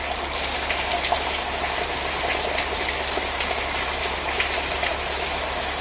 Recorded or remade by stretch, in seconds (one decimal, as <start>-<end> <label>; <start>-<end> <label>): 0.0-4.9 recorded; 4.9-5.8 remade